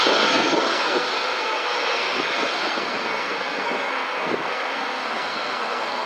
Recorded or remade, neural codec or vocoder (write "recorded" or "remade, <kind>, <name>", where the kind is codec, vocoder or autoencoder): remade, codec, SNAC